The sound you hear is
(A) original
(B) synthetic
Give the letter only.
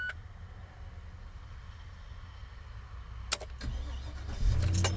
A